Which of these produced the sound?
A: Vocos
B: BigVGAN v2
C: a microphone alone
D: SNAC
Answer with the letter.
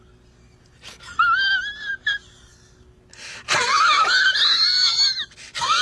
C